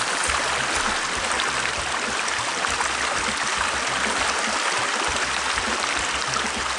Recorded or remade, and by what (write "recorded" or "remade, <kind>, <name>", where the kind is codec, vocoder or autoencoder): recorded